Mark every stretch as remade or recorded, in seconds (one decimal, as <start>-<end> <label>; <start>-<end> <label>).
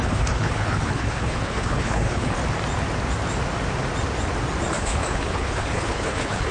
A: 0.0-2.4 remade; 2.4-4.7 recorded; 4.7-6.5 remade